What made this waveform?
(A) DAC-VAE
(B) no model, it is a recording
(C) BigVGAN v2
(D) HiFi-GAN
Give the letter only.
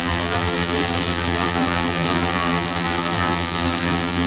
C